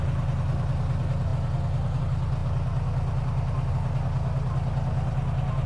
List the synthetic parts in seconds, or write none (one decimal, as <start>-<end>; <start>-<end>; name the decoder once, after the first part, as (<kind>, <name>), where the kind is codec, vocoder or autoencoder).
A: none